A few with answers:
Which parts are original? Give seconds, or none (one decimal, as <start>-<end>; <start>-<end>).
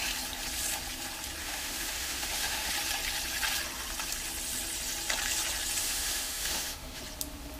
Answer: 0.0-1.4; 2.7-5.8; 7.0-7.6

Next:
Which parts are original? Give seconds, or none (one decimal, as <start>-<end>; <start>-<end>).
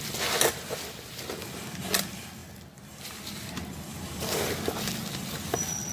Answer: 0.0-5.9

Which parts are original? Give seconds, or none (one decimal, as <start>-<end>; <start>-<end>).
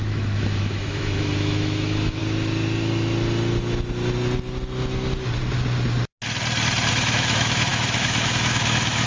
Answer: 2.2-6.9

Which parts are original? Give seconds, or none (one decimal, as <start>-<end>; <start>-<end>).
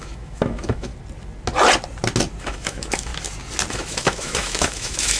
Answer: 0.9-2.4; 3.1-3.7